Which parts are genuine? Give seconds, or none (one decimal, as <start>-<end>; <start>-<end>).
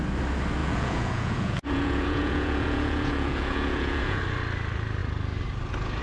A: 0.0-0.6; 4.2-6.0